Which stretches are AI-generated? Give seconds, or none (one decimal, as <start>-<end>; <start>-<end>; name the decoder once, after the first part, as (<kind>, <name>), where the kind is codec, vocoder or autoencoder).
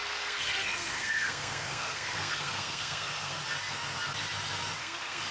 0.0-3.4 (codec, SNAC); 4.8-5.3